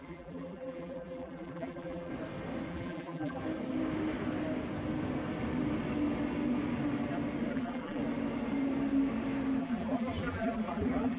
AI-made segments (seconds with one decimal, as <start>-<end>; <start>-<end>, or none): 0.0-2.1; 2.7-3.4; 7.5-8.0; 9.6-11.2